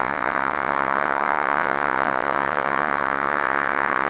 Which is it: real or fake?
fake